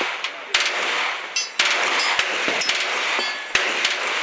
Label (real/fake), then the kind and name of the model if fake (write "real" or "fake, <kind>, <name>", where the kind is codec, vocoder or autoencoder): real